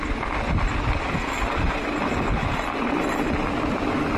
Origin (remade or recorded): remade